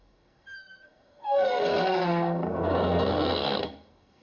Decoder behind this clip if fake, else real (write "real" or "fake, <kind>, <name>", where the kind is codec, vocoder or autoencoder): fake, codec, SNAC